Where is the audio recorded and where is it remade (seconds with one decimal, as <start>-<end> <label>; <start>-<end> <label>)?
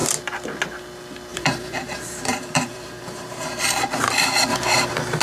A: 0.0-1.3 recorded; 1.3-3.5 remade; 3.5-4.5 recorded; 4.5-5.2 remade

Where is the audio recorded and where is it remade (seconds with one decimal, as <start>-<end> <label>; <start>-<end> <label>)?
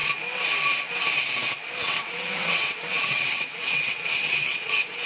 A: 0.0-1.8 recorded; 1.8-5.1 remade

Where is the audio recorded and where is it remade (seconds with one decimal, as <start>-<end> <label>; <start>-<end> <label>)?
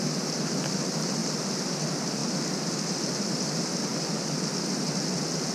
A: 0.0-5.5 recorded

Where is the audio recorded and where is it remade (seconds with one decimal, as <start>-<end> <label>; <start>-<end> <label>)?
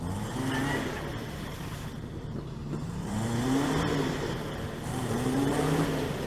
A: 0.0-1.7 recorded; 1.7-5.5 remade; 5.5-6.3 recorded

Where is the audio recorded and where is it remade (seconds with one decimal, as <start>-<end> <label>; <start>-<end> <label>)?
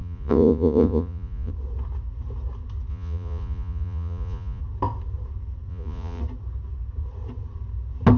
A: 0.0-1.5 remade; 1.5-2.9 recorded; 2.9-4.6 remade; 4.6-5.7 recorded; 5.7-6.2 remade; 6.2-8.2 recorded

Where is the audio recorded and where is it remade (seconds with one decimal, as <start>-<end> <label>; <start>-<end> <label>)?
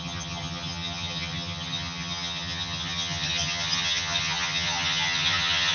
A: 0.0-5.7 remade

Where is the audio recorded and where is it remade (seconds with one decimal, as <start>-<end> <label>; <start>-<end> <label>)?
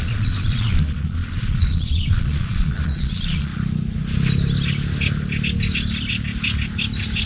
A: 0.0-3.5 remade; 3.5-7.3 recorded